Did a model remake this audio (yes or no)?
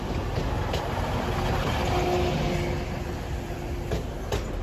no